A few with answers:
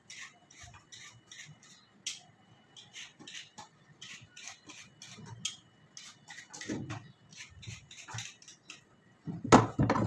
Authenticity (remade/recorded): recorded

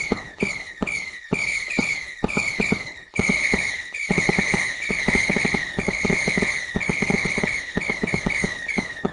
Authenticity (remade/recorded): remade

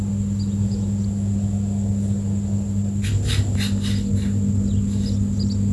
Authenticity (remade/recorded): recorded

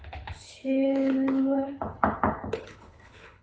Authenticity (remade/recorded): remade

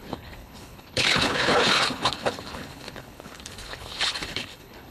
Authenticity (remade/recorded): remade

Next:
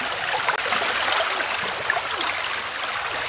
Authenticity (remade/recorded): recorded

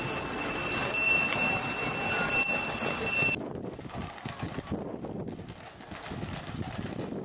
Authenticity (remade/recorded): recorded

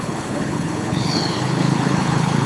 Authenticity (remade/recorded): remade